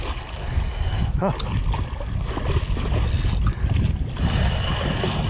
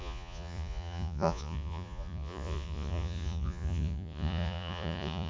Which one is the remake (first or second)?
second